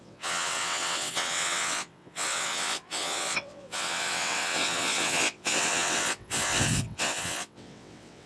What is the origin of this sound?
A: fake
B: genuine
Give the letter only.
A